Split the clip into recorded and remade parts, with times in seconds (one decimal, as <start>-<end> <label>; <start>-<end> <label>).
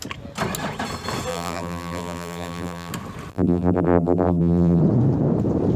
0.0-1.3 recorded; 1.3-2.9 remade; 2.9-3.3 recorded; 3.3-4.8 remade; 4.8-5.8 recorded